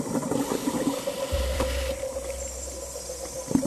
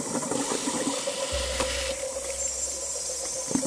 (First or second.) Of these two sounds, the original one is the second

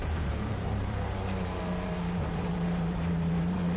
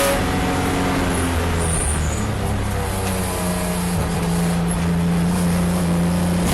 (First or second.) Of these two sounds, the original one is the second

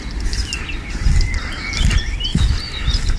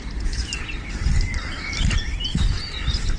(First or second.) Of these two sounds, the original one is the first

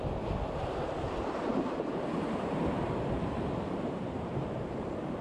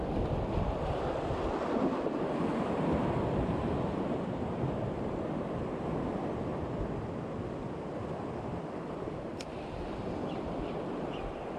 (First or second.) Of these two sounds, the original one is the second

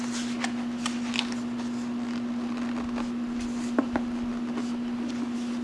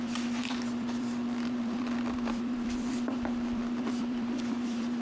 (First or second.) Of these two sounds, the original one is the first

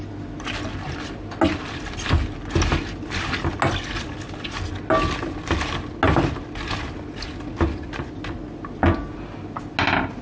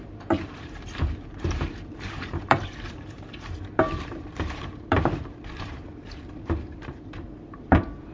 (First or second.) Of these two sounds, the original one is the first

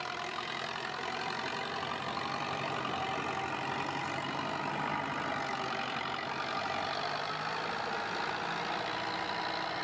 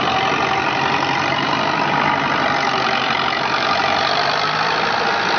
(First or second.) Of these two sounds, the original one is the first